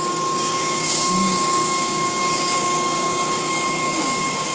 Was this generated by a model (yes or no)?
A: yes